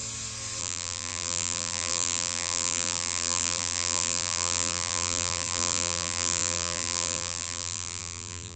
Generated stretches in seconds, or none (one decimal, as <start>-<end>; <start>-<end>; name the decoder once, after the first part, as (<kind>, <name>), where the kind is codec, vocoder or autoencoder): 0.6-8.6 (vocoder, BigVGAN v2)